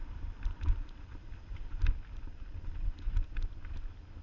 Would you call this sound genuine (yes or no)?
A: yes